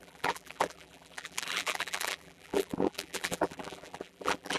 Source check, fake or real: fake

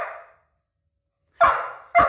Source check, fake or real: real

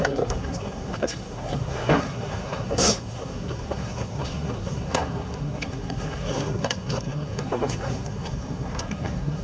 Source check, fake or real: fake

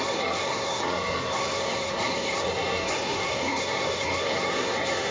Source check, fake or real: fake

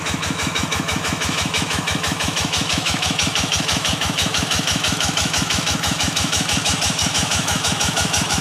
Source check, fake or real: fake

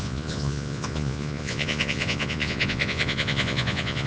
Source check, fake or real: fake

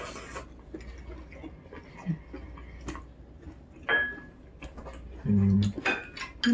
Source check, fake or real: real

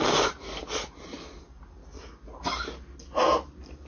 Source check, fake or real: real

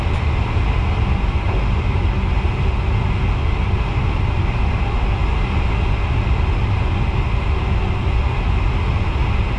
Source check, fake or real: real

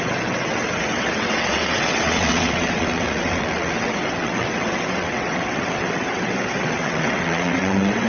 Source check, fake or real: fake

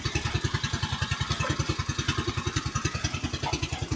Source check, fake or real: real